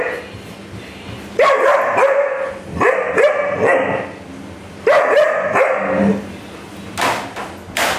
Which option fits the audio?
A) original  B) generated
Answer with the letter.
A